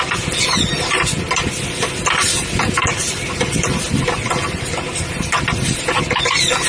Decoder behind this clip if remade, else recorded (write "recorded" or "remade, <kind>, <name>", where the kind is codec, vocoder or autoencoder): recorded